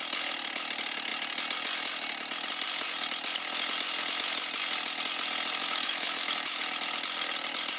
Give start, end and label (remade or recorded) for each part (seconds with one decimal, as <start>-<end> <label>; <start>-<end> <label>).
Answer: 0.0-5.6 recorded; 5.6-6.6 remade; 6.6-7.8 recorded